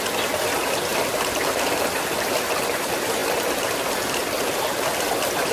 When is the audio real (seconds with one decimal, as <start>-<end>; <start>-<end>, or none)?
0.0-5.5